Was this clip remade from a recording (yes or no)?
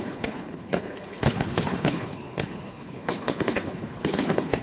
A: yes